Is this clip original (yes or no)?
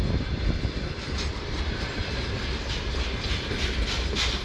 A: yes